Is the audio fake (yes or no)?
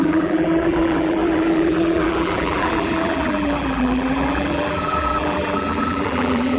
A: yes